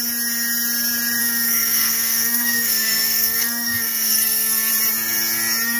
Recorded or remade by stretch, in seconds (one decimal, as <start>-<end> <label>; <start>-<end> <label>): 0.0-1.2 recorded; 1.2-4.7 remade; 4.7-5.8 recorded